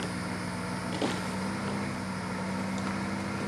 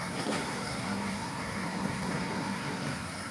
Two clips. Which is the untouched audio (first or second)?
first